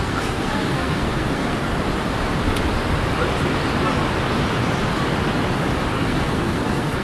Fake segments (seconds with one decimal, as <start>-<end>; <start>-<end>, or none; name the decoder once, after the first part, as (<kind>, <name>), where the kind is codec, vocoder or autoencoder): 0.0-1.7 (codec, SNAC); 5.9-7.0